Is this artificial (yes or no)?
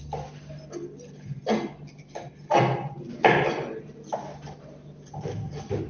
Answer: no